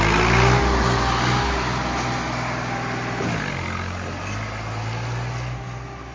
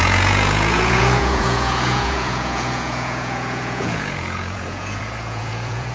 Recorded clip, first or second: first